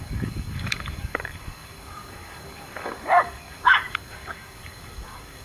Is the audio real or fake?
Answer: fake